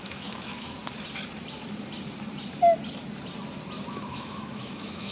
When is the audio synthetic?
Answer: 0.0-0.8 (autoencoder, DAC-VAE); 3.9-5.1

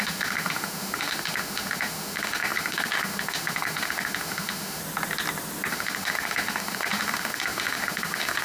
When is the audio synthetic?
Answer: 0.0-4.8 (autoencoder, DAC-VAE); 5.7-8.4

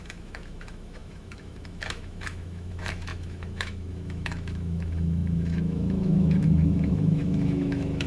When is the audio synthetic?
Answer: 0.0-8.1 (autoencoder, DAC-VAE)